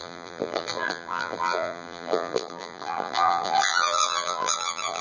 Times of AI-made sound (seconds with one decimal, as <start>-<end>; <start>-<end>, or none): 0.0-5.0